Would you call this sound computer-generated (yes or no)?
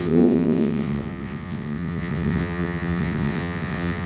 yes